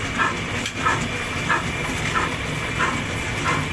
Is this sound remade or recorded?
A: recorded